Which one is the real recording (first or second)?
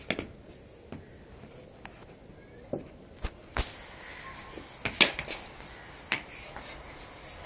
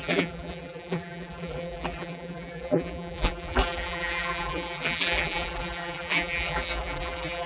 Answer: first